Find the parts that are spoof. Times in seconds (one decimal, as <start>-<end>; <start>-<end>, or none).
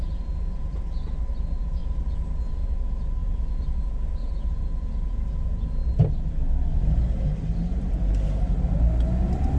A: 0.0-0.7; 1.4-1.8; 2.5-5.8